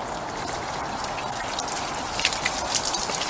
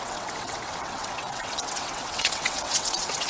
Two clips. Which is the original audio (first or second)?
first